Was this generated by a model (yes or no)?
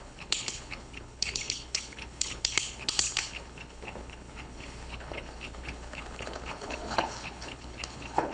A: yes